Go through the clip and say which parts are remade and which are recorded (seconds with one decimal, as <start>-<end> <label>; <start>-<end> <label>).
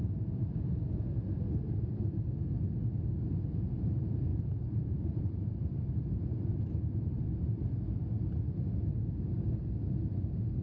0.0-4.3 recorded; 4.3-5.6 remade; 5.6-10.6 recorded